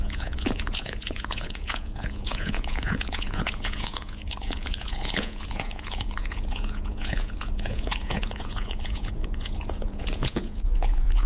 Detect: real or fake fake